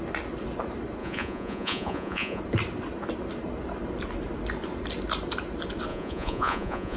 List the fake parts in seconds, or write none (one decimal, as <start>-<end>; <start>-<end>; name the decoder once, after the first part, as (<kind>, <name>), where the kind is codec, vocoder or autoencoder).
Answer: 1.0-2.4 (vocoder, Vocos); 5.9-7.0